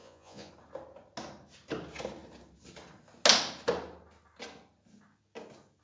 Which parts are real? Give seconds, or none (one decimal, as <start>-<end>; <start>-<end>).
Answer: 0.5-5.8